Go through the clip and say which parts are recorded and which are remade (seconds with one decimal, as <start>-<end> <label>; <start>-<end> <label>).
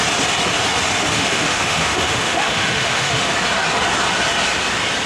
0.0-1.1 recorded; 1.1-3.3 remade; 3.3-5.1 recorded